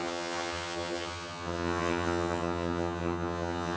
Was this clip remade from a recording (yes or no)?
yes